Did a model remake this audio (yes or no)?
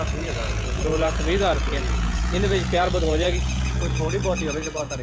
yes